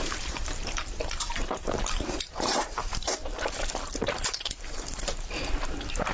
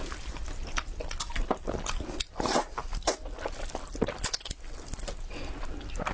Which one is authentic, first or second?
second